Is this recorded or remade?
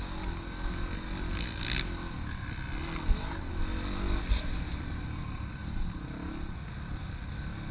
recorded